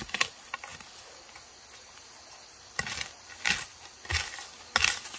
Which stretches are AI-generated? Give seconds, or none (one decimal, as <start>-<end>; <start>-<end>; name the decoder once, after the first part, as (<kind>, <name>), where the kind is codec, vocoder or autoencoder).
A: none